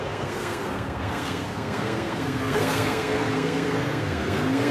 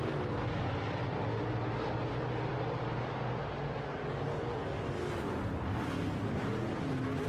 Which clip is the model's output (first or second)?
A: first